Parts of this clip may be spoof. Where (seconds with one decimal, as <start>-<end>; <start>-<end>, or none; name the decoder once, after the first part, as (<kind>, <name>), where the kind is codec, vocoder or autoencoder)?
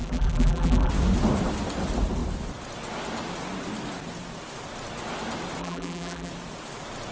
0.0-0.9 (vocoder, BigVGAN v2); 5.6-6.3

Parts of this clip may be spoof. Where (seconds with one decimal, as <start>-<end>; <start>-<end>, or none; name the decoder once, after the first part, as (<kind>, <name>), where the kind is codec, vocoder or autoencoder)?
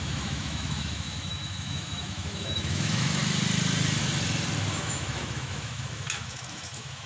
0.0-3.2 (autoencoder, DAC-VAE); 4.8-7.1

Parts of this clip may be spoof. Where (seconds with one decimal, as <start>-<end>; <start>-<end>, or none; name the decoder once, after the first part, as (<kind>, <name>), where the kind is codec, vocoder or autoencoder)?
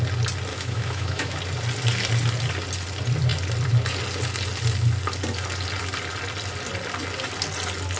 0.5-1.4 (autoencoder, DAC-VAE)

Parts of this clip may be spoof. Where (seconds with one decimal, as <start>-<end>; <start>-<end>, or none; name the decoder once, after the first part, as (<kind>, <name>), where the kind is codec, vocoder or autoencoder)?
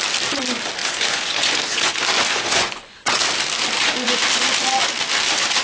0.8-1.9 (vocoder, Vocos); 2.3-3.2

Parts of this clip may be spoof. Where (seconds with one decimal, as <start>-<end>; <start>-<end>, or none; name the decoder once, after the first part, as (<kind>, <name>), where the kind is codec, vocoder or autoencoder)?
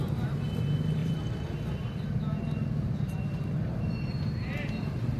none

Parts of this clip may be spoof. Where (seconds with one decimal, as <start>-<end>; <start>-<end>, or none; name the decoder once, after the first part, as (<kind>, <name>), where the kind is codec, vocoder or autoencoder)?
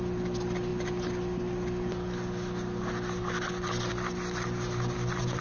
none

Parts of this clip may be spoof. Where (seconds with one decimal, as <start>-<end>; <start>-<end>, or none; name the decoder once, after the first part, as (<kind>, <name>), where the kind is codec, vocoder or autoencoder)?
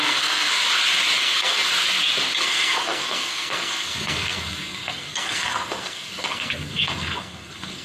0.0-0.6 (codec, SNAC); 1.2-1.7; 2.4-7.8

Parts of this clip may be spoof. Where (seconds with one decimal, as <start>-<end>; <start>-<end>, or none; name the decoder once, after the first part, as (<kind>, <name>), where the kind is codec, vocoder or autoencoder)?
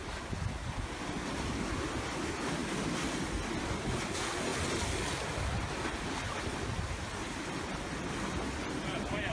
none